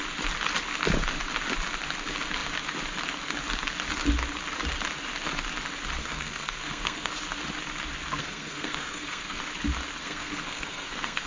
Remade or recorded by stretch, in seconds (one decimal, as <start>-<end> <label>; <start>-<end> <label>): 0.0-6.0 recorded; 6.0-7.1 remade; 7.1-8.2 recorded; 8.2-9.4 remade; 9.4-10.0 recorded; 10.0-11.3 remade